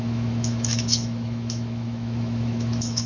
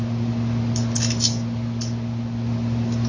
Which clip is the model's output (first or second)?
first